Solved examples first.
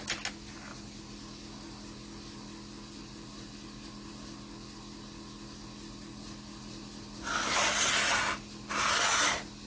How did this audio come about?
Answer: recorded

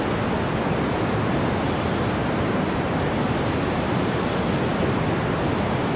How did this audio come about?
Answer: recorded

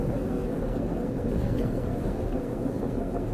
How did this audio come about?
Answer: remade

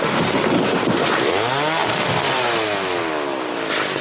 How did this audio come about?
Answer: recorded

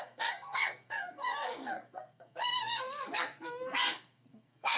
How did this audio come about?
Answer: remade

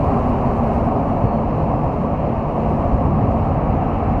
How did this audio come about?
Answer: recorded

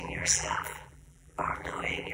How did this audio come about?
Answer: remade